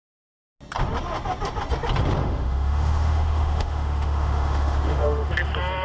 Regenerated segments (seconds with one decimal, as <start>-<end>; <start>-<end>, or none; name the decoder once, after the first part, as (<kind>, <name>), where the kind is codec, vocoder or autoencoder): 2.2-5.3 (autoencoder, DAC-VAE)